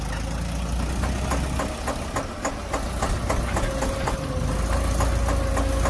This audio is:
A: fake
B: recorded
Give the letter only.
B